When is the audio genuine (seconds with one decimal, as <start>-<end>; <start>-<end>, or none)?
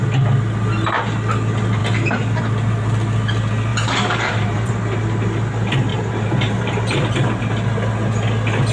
0.0-3.7; 4.7-5.9; 7.4-8.7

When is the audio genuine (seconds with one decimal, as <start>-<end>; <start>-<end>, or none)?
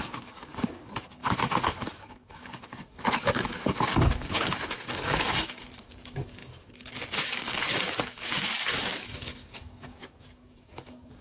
none